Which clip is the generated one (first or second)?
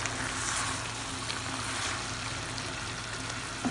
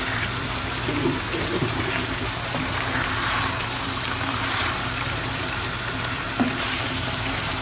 second